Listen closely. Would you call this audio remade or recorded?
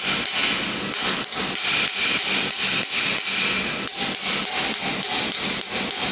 recorded